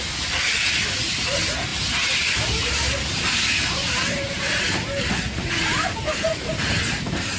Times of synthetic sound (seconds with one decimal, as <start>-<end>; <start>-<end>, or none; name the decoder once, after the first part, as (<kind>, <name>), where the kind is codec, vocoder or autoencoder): 1.7-6.1 (vocoder, BigVGAN v2)